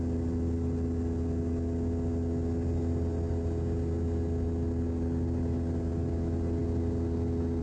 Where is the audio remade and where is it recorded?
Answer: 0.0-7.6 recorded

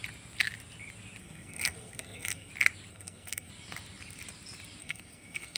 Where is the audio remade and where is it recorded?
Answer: 0.0-1.2 recorded; 1.2-2.5 remade; 2.5-2.9 recorded; 2.9-3.5 remade; 3.5-4.8 recorded; 4.8-5.6 remade

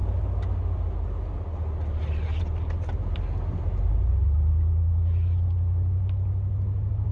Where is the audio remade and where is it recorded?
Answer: 0.0-7.1 recorded